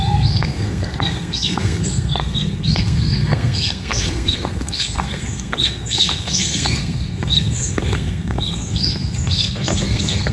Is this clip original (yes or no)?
no